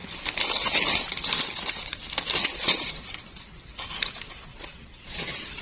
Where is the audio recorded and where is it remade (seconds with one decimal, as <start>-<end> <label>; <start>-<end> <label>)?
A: 0.0-2.4 recorded; 2.4-3.0 remade; 3.0-4.5 recorded; 4.5-5.6 remade